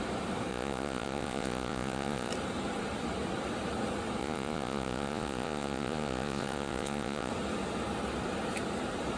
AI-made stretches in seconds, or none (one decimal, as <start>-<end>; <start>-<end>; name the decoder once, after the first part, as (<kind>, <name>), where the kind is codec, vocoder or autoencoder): 0.5-2.3 (vocoder, Vocos); 4.2-7.3